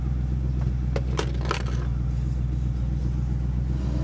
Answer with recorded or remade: recorded